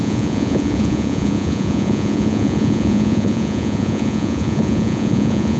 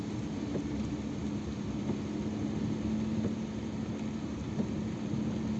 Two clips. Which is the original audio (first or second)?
second